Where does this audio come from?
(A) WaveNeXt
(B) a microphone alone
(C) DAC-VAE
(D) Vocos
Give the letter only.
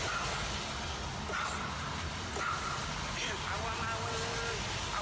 B